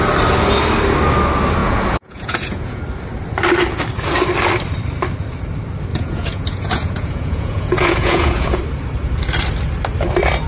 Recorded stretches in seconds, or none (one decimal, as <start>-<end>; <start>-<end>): 0.0-1.6; 2.8-5.9; 8.6-10.5

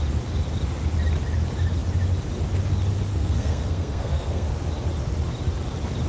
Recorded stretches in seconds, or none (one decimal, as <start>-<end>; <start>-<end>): 0.0-3.1; 4.5-6.1

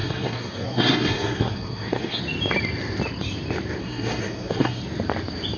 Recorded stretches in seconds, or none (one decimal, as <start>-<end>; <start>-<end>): 2.2-3.8; 4.8-5.6